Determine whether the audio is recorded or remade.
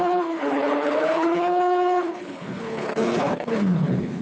remade